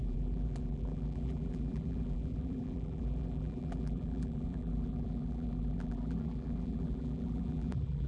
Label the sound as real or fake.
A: fake